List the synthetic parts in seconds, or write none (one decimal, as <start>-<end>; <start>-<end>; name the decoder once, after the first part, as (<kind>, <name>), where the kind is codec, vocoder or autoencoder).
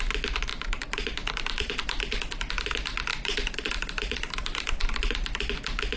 0.5-2.3 (vocoder, BigVGAN v2); 3.1-4.9